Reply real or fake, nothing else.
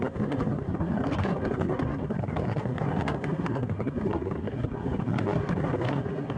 fake